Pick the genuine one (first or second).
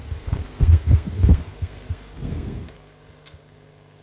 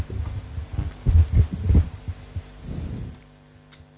second